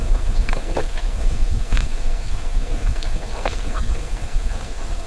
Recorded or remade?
remade